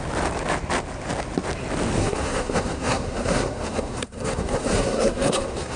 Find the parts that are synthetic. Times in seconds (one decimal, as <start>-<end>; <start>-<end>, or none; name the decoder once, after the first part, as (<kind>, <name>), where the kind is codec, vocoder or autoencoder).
2.0-5.8 (codec, SNAC)

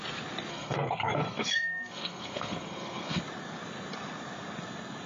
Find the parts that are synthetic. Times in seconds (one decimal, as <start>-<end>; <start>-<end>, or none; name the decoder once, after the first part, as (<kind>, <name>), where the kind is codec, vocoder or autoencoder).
0.5-3.2 (codec, SNAC)

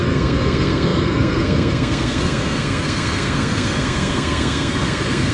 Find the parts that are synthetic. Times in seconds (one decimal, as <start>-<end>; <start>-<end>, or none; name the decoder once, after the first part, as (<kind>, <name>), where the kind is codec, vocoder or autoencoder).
0.0-5.3 (codec, SNAC)